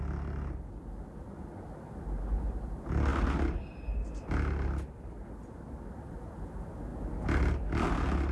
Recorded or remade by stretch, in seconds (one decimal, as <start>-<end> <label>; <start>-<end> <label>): 0.0-8.3 recorded